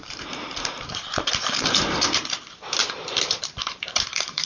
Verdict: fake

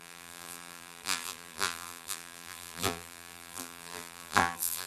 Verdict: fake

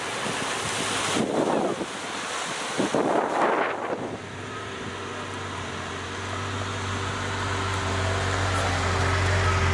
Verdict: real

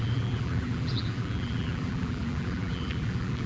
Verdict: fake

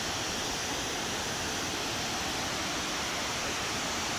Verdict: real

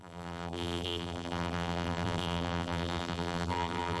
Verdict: fake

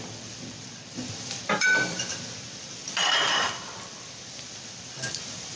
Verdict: fake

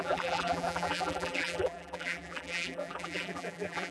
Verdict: fake